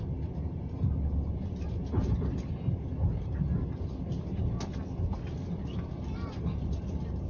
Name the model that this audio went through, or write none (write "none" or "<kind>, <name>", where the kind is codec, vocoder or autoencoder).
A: none